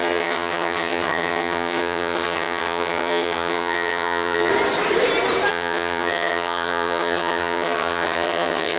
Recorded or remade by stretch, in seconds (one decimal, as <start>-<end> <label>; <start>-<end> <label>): 0.0-4.5 remade; 4.5-5.5 recorded; 5.5-8.8 remade